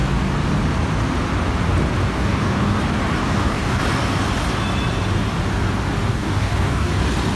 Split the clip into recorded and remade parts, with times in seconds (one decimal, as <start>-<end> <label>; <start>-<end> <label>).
0.0-2.0 recorded; 2.0-2.8 remade; 2.8-3.2 recorded; 3.2-3.8 remade; 3.8-6.1 recorded; 6.1-6.9 remade; 6.9-7.4 recorded